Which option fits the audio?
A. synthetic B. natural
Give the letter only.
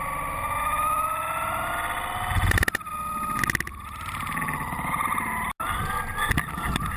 B